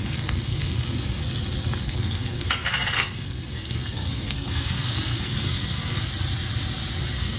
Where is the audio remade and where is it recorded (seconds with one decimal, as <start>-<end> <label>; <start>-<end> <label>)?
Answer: 0.0-1.2 remade; 1.2-1.8 recorded; 1.8-6.1 remade; 6.1-7.0 recorded; 7.0-7.4 remade